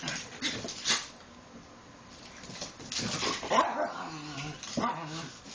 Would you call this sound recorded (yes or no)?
yes